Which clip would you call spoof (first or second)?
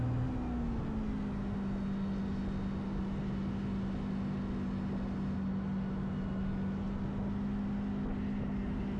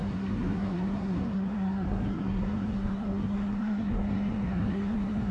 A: second